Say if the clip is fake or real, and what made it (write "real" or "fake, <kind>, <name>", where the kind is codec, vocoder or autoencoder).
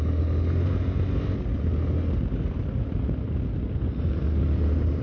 real